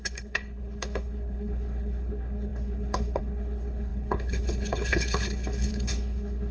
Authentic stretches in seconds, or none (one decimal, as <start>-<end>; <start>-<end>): none